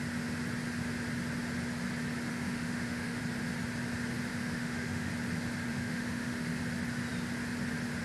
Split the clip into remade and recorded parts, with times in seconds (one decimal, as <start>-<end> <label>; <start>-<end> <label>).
0.0-2.3 recorded; 2.3-3.2 remade; 3.2-4.3 recorded; 4.3-5.1 remade; 5.1-5.7 recorded; 5.7-6.6 remade; 6.6-8.0 recorded